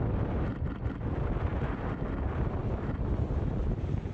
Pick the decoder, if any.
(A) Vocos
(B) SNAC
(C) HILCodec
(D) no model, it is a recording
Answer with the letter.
D